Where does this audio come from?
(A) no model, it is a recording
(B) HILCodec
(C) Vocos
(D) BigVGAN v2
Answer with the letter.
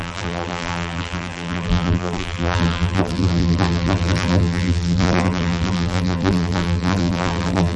D